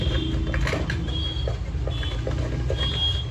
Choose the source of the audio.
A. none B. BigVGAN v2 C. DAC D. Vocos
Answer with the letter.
A